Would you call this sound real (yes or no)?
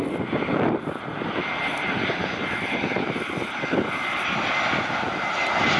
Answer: yes